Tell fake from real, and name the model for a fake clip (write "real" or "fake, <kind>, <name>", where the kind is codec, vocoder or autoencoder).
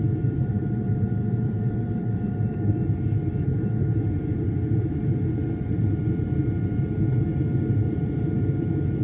fake, vocoder, BigVGAN v2